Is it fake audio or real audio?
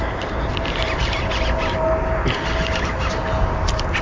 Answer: real